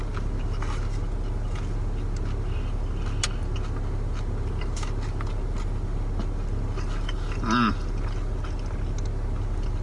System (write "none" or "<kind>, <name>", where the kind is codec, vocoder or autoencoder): none